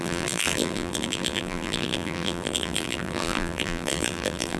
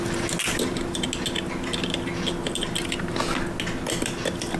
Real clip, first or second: second